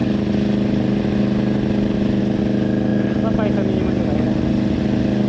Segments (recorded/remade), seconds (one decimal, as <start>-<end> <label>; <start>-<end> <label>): 0.0-5.3 recorded